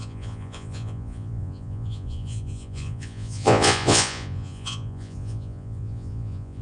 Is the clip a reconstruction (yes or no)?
yes